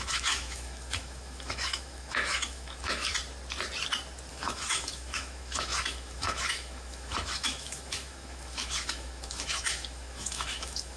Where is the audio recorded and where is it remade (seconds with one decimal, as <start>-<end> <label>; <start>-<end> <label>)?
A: 0.0-3.1 remade; 3.1-4.3 recorded; 4.3-11.0 remade